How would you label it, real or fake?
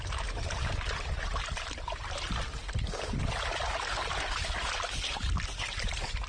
real